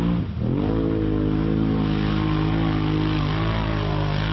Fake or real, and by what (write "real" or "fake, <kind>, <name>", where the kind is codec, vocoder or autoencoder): real